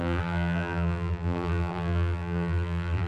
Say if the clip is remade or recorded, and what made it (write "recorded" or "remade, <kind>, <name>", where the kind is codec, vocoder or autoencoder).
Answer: remade, vocoder, BigVGAN v2